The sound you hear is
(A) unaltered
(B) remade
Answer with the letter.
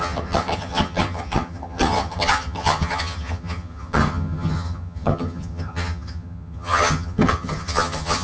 B